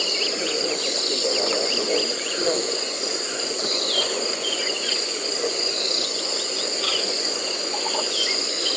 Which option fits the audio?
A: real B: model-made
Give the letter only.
B